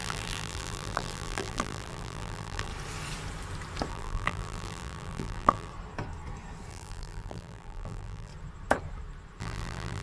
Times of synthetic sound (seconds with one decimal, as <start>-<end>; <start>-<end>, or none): 0.0-2.7; 3.9-5.7; 6.7-8.3; 9.4-10.0